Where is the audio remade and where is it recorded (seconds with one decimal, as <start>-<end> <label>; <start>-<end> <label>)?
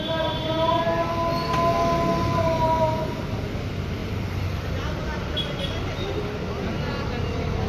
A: 0.0-4.0 recorded; 4.0-5.4 remade; 5.4-7.7 recorded